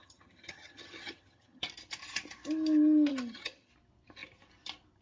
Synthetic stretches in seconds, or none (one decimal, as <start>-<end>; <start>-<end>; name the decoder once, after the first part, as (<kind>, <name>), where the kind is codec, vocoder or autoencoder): 0.0-1.6 (vocoder, HiFi-GAN); 3.1-3.7